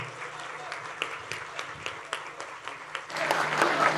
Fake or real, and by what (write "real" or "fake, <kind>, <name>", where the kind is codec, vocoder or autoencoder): fake, vocoder, BigVGAN v2